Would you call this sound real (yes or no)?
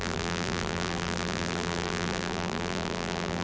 no